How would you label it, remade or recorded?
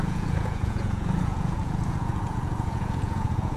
remade